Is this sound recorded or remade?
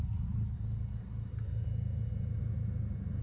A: recorded